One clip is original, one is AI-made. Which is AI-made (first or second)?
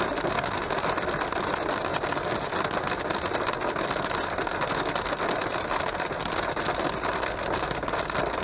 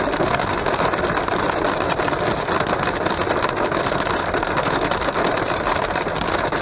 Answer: second